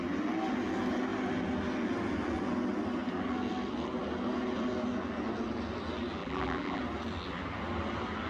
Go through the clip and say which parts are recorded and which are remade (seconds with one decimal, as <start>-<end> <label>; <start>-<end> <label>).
0.0-6.2 recorded; 6.2-6.8 remade; 6.8-8.3 recorded